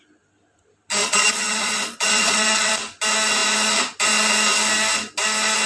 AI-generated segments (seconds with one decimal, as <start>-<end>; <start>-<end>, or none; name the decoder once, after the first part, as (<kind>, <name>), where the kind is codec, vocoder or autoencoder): 1.0-2.7 (vocoder, Vocos)